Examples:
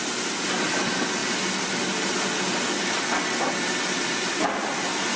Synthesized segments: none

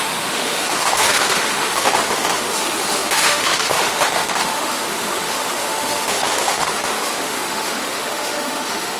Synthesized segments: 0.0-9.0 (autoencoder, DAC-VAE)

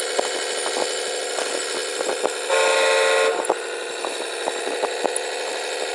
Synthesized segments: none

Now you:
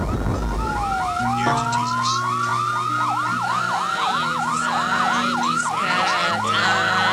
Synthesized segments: none

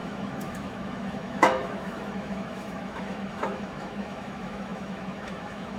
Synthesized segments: 0.0-5.8 (autoencoder, DAC-VAE)

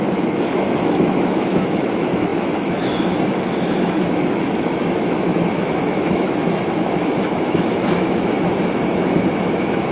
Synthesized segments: 0.0-9.9 (autoencoder, DAC-VAE)

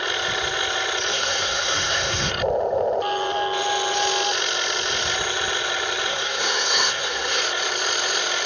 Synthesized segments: 1.1-2.3 (codec, SNAC); 6.1-7.4

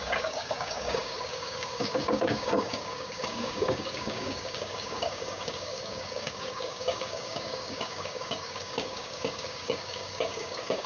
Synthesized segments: 0.0-10.9 (codec, DAC)